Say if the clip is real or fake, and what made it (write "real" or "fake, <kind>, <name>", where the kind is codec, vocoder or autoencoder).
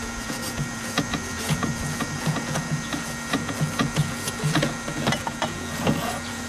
fake, vocoder, Vocos